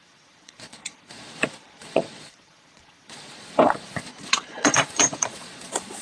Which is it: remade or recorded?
remade